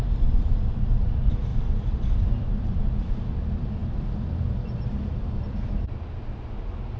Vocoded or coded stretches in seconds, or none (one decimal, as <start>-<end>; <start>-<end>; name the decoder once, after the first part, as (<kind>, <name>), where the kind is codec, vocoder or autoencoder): 1.5-3.3 (vocoder, BigVGAN v2); 3.8-5.9